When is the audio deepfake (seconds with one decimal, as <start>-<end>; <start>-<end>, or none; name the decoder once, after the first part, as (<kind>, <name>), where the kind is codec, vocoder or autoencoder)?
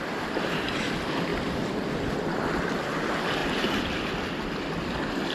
1.3-2.1 (vocoder, BigVGAN v2)